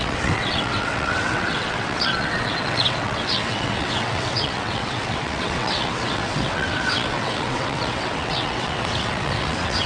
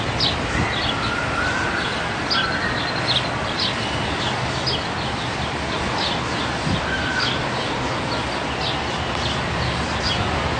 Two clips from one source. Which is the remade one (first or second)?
first